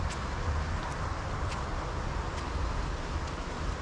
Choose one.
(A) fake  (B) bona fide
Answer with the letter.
B